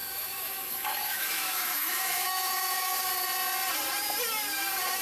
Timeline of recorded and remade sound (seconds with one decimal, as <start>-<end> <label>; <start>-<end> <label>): 0.0-3.0 remade; 3.0-5.0 recorded